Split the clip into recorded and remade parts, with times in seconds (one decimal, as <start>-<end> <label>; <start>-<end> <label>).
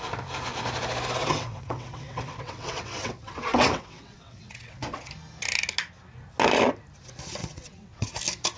0.0-1.2 recorded; 1.2-5.1 remade; 5.1-7.4 recorded; 7.4-8.1 remade; 8.1-8.6 recorded